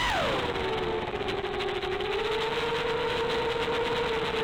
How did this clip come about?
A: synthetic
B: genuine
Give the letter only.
B